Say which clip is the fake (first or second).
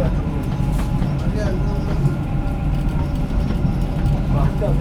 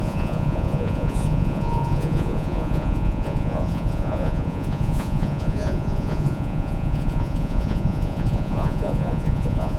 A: second